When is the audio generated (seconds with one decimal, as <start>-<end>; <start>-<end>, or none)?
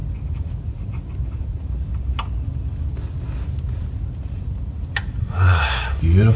5.2-6.0